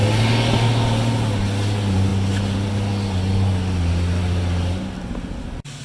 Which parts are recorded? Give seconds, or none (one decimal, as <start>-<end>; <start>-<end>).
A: 0.0-5.8